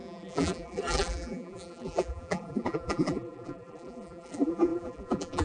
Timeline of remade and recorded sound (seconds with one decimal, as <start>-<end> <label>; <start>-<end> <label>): 0.0-5.4 remade